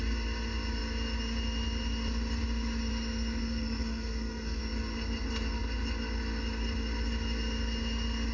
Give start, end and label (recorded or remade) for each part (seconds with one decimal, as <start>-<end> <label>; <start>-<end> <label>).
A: 0.0-3.4 recorded; 3.4-4.6 remade; 4.6-8.3 recorded